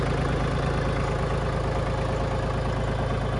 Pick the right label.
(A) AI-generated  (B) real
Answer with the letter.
B